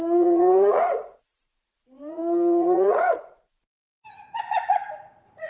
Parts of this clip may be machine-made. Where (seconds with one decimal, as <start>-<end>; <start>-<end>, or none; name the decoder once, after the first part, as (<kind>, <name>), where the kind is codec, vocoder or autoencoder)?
0.0-5.5 (vocoder, Vocos)